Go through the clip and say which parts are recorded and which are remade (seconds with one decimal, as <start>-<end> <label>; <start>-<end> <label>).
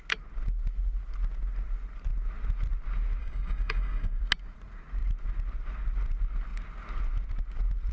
0.0-3.2 recorded; 3.2-4.2 remade; 4.2-7.9 recorded